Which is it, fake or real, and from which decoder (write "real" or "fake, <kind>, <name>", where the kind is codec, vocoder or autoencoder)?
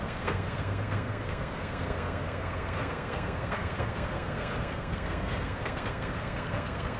fake, codec, SNAC